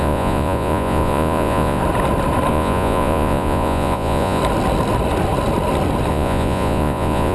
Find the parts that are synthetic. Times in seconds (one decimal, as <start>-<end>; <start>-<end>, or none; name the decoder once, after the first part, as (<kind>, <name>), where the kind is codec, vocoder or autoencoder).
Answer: 0.0-1.8 (vocoder, Vocos); 2.5-4.4; 6.1-7.3